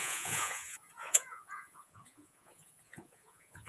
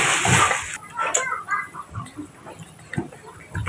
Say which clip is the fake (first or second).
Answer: first